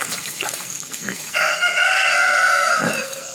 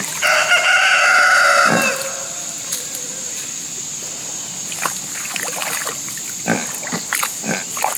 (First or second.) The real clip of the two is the second